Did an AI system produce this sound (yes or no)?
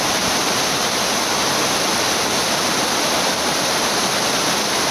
no